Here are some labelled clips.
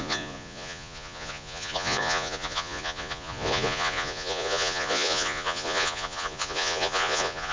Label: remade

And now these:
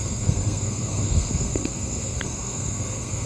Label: remade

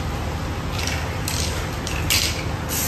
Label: recorded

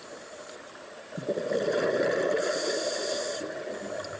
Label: remade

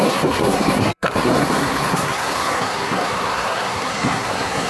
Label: remade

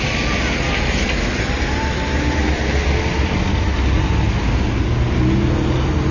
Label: recorded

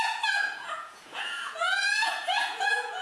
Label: remade